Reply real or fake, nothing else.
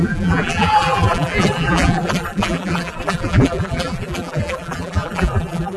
fake